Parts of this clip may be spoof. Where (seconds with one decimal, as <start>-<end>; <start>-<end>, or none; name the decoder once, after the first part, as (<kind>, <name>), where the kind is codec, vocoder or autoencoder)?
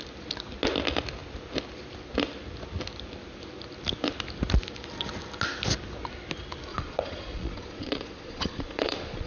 6.7-9.3 (vocoder, Vocos)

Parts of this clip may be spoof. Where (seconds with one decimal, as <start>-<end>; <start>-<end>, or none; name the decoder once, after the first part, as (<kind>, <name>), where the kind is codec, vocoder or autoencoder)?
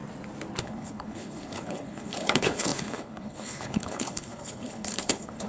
0.6-5.5 (codec, HILCodec)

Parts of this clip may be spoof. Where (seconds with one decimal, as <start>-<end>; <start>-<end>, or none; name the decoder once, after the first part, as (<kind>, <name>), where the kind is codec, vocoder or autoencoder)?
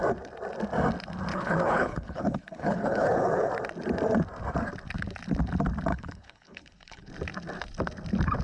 1.3-3.5 (codec, HILCodec); 5.9-7.1